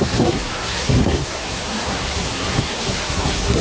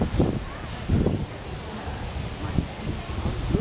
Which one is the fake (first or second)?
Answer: first